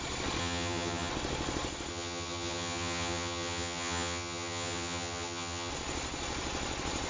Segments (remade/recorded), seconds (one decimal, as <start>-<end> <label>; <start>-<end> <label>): 0.0-0.4 recorded; 0.4-1.1 remade; 1.1-1.9 recorded; 1.9-5.7 remade; 5.7-7.1 recorded